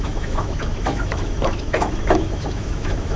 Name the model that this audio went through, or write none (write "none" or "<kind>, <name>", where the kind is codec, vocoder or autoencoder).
autoencoder, DAC-VAE